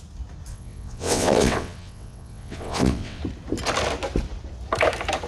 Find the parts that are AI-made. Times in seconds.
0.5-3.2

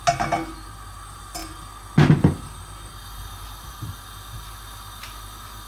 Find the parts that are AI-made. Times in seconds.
none

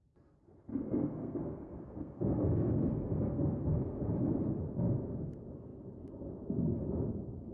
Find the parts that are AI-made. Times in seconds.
0.7-3.7